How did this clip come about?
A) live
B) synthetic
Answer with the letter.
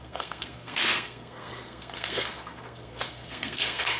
B